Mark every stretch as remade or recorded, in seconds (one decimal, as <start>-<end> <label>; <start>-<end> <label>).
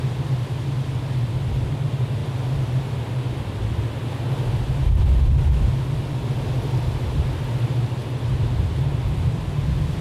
0.0-10.0 recorded